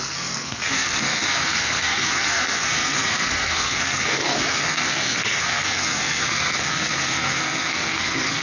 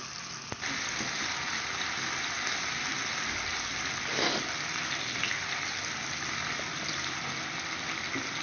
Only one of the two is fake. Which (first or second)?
first